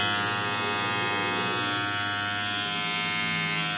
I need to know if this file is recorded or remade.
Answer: recorded